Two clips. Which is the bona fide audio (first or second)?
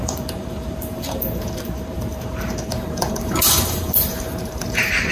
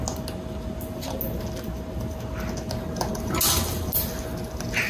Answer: second